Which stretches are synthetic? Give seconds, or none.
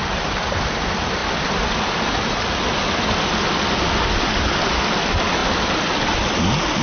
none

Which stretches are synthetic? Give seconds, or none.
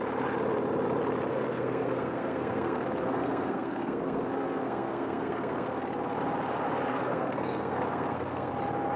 1.3-5.8; 6.9-8.5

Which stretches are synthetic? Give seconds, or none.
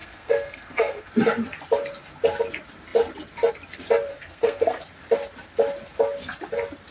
0.0-1.1; 4.1-4.8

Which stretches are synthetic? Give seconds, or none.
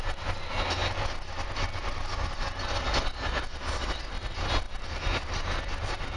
none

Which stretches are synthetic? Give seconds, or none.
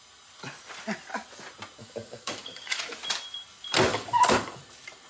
1.8-2.8; 3.9-4.6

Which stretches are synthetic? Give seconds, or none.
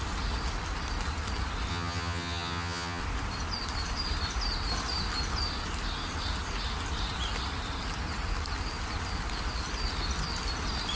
1.7-3.0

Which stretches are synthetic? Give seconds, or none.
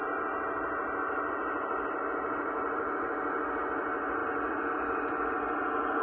none